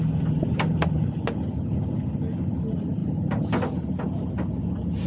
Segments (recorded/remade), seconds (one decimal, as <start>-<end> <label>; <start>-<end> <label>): 0.0-5.1 recorded